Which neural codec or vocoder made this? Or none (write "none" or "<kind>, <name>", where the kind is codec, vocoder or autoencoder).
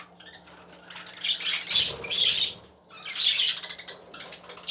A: none